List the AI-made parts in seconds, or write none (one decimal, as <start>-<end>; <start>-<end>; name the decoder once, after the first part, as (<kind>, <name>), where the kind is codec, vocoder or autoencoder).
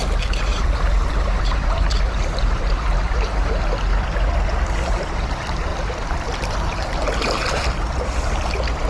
0.5-3.8 (vocoder, BigVGAN v2)